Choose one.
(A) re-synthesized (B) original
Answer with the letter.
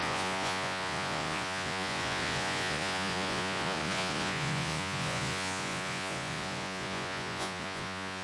A